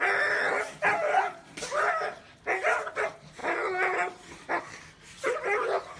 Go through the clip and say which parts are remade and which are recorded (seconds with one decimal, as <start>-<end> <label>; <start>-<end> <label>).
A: 0.0-6.0 recorded